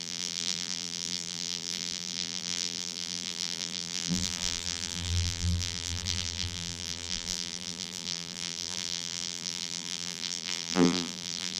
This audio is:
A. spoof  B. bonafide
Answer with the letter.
A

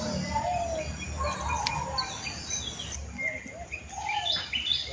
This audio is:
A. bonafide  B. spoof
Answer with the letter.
A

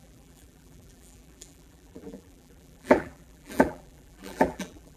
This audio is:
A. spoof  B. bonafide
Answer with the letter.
A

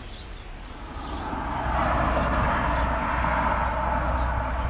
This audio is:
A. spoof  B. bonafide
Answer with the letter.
B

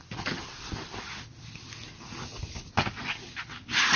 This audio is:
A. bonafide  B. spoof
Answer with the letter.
A